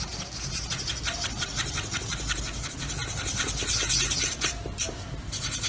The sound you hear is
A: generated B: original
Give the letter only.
B